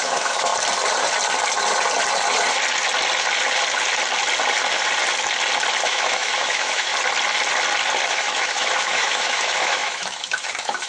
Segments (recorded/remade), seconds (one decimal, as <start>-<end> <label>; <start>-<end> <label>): 0.0-0.5 remade; 0.5-5.8 recorded; 5.8-6.9 remade; 6.9-8.1 recorded; 8.1-10.9 remade